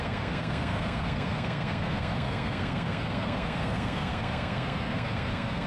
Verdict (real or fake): fake